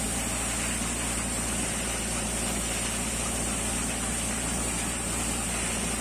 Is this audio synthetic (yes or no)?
no